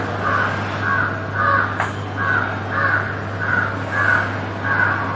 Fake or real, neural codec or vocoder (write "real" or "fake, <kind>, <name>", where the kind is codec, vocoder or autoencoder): real